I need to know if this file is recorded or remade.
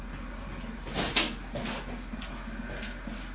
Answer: recorded